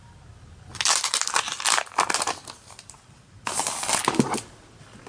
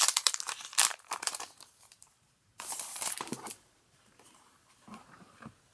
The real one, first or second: first